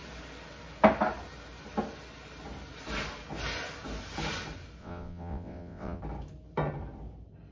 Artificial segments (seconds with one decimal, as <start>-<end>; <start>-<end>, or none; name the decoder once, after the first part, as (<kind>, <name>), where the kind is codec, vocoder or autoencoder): 4.8-6.0 (vocoder, WaveNeXt)